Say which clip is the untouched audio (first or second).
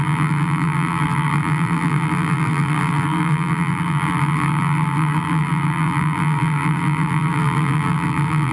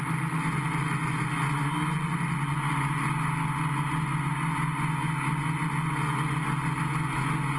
second